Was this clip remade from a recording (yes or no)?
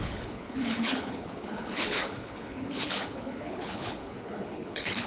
yes